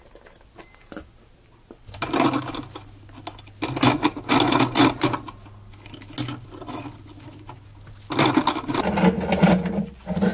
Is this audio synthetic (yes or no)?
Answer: no